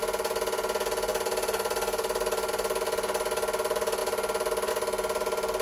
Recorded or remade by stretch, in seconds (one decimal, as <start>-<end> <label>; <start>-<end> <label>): 0.0-5.6 recorded